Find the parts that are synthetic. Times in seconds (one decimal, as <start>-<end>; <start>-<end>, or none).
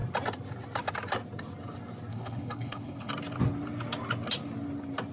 2.1-3.1